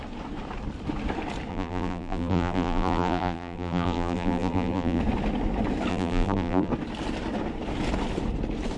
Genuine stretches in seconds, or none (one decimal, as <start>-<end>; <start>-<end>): 0.0-1.5; 5.0-5.9; 6.7-8.8